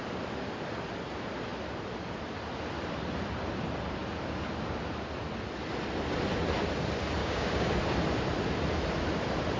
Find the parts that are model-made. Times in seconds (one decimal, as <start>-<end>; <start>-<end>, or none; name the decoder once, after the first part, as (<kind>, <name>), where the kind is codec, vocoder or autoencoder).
7.2-7.7 (codec, DAC)